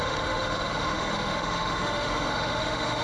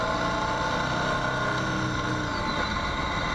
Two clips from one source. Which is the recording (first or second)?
second